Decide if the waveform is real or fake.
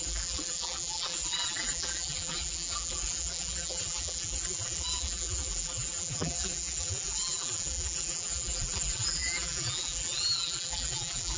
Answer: fake